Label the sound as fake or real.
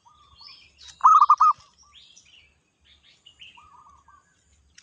real